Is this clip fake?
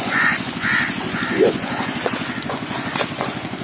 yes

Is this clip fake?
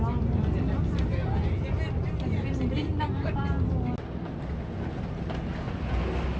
no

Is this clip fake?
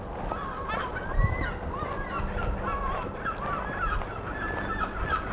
no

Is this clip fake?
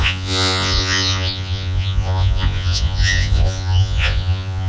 yes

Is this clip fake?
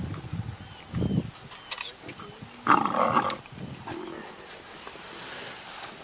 no